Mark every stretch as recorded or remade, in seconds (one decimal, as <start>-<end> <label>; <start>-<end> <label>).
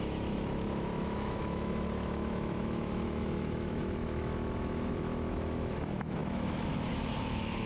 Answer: 0.0-7.7 remade